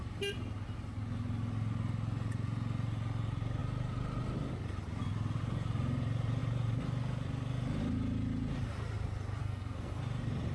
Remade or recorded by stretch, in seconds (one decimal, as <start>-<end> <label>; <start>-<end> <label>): 0.0-9.4 recorded; 9.4-10.0 remade; 10.0-10.5 recorded